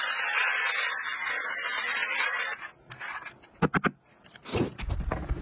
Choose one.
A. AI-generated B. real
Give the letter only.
B